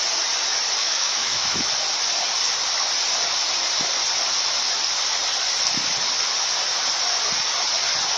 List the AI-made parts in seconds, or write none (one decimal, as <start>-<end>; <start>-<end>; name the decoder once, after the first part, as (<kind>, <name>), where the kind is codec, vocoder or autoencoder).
0.8-1.7 (autoencoder, DAC-VAE)